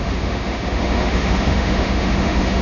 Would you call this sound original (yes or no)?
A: no